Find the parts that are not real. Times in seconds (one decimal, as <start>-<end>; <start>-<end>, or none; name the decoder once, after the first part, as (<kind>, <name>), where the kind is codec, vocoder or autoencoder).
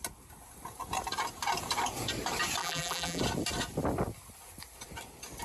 2.6-3.2 (vocoder, BigVGAN v2)